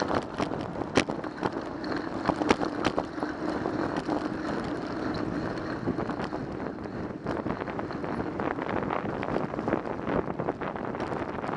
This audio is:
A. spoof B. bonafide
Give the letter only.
B